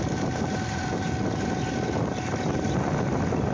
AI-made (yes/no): no